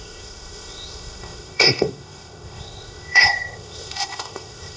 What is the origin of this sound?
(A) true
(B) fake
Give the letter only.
B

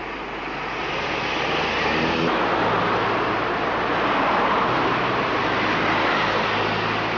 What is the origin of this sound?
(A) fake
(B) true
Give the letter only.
B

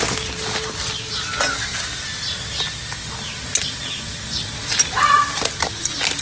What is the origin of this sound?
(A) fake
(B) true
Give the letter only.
B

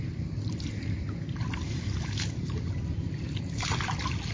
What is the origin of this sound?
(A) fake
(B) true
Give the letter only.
B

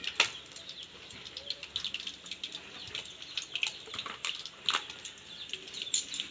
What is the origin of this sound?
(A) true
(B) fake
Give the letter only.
A